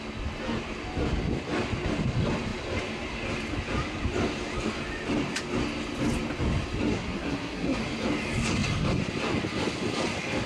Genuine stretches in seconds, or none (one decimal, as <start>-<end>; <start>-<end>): 0.0-6.9; 7.8-10.5